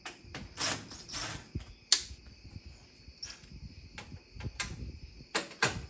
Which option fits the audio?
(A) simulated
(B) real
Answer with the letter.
B